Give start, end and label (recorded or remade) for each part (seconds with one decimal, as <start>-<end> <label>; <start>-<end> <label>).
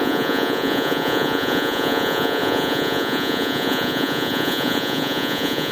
0.0-5.7 remade